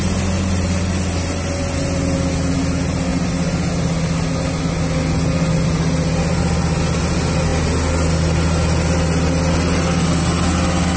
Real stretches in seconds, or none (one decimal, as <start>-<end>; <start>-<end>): 0.0-11.0